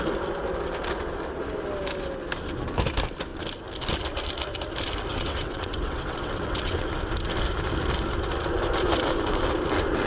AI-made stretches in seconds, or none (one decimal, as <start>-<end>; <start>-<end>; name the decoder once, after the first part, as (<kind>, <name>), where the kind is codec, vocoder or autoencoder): 5.1-6.9 (vocoder, WaveNeXt)